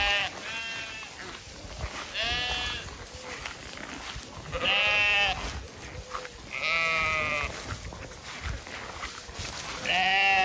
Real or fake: real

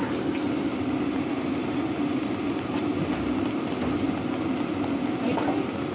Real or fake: real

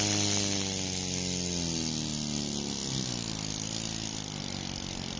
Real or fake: real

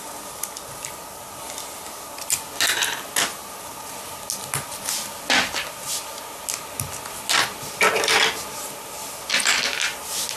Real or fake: real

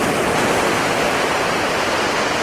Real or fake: real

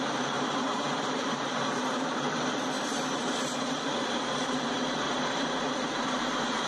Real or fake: fake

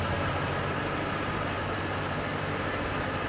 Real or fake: real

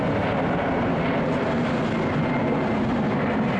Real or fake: real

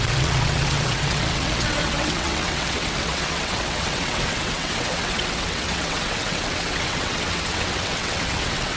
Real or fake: fake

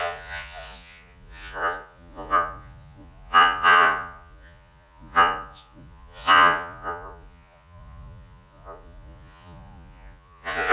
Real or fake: fake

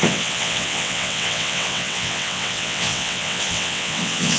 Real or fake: fake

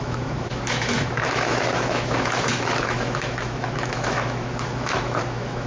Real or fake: fake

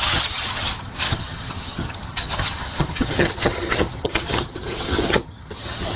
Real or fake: fake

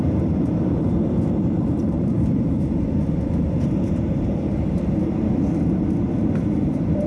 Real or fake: fake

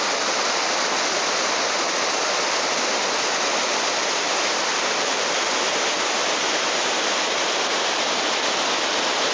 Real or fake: real